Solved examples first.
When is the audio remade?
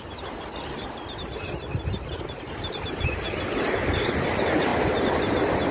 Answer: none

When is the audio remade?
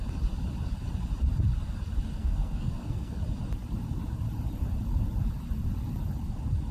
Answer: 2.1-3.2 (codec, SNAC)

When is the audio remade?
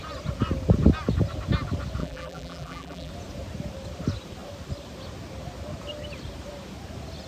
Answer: 2.0-3.1 (vocoder, BigVGAN v2)